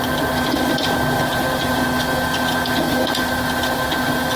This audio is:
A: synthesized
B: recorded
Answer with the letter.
B